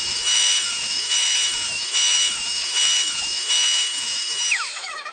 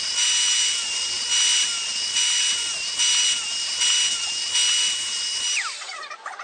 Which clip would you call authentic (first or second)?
second